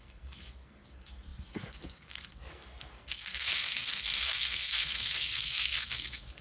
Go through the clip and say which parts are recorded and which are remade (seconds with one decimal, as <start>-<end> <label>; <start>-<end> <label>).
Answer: 0.0-6.4 remade